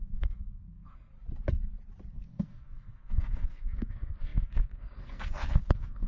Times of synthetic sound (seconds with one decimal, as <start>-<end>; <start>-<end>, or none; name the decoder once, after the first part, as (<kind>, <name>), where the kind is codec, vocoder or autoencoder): 0.0-1.1 (codec, SNAC); 2.1-6.1